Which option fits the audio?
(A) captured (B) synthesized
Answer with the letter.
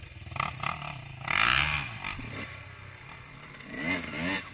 A